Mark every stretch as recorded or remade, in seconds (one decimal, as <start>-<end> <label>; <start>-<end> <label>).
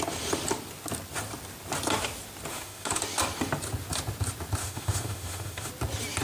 0.0-2.5 recorded; 2.5-3.0 remade; 3.0-4.6 recorded; 4.6-5.7 remade; 5.7-6.2 recorded